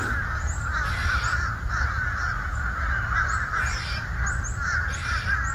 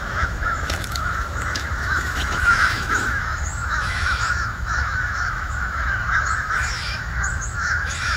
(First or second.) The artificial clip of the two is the second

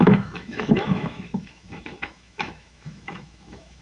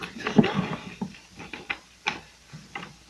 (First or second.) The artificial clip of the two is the first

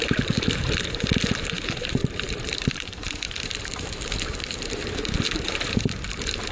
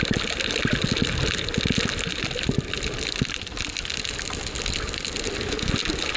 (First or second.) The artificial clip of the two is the first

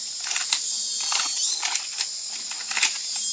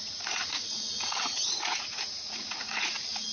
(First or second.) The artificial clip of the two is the second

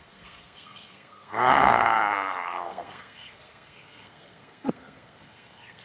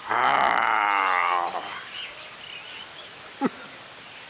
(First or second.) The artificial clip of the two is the first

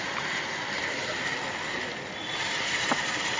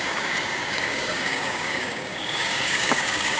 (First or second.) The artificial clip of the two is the second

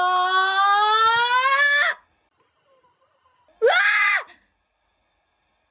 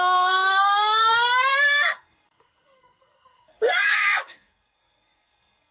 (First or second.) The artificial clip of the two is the second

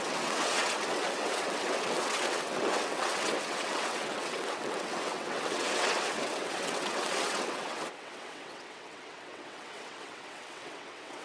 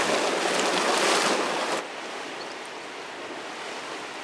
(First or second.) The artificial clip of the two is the first